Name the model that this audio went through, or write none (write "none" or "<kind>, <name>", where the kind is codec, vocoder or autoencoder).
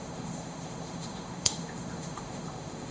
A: autoencoder, DAC-VAE